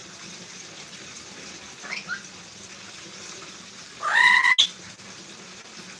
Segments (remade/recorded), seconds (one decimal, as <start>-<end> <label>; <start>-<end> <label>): 0.0-3.6 remade; 3.6-6.0 recorded